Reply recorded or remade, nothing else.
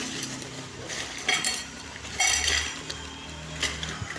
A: remade